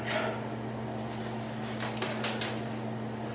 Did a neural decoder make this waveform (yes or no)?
no